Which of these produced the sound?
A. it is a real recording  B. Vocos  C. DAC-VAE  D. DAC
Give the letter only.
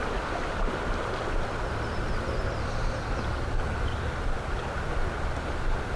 A